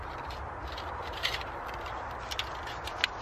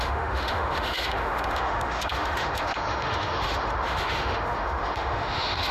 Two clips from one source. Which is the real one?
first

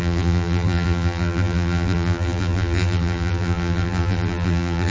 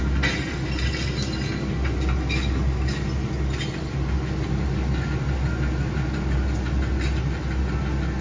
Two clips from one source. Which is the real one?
second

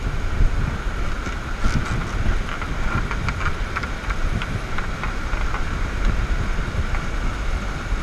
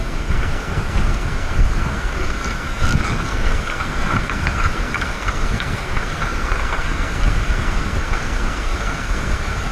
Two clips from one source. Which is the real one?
first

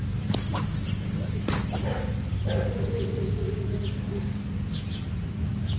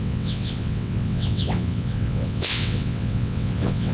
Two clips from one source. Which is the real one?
first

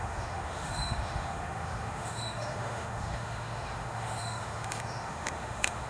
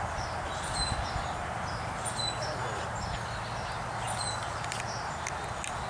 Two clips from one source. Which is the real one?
second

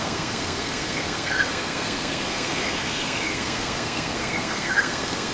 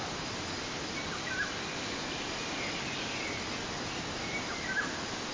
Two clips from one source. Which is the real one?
second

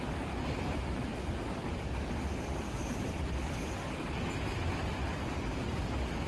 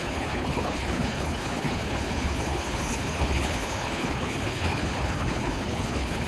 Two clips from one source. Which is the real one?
first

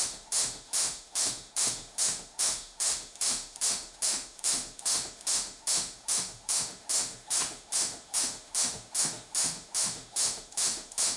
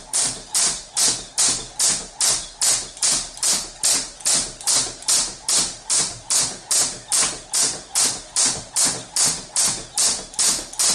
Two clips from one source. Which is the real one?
second